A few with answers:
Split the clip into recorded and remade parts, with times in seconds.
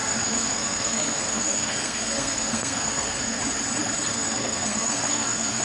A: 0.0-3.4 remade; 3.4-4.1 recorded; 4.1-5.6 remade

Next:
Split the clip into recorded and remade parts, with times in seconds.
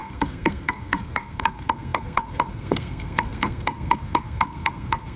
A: 0.0-5.2 remade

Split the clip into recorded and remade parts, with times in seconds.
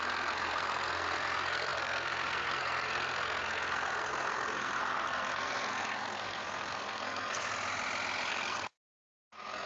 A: 0.0-7.4 remade; 7.4-8.3 recorded; 8.3-9.7 remade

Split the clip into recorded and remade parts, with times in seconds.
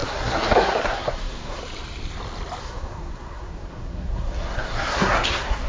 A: 0.0-1.6 remade; 1.6-2.6 recorded; 2.6-5.7 remade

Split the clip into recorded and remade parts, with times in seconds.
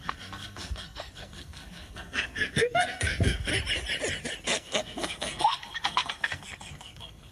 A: 0.0-3.5 remade; 3.5-4.4 recorded; 4.4-7.3 remade